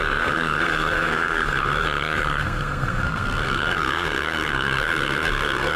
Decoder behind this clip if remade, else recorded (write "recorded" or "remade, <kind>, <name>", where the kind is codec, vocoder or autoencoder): remade, codec, SNAC